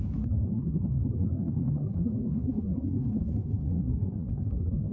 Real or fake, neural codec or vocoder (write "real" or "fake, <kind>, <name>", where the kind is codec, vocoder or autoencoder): fake, codec, SNAC